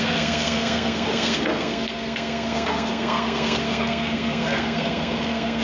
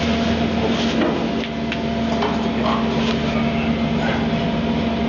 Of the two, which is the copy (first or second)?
first